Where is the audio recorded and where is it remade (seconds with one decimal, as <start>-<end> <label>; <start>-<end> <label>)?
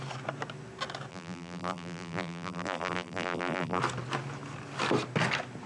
0.0-1.1 recorded; 1.1-3.8 remade; 3.8-5.7 recorded